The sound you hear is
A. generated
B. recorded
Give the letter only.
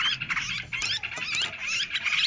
B